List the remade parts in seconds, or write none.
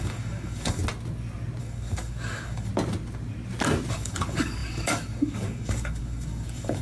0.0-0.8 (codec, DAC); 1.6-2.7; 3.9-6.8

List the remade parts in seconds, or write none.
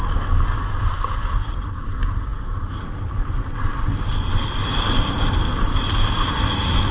none